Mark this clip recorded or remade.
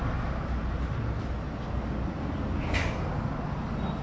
recorded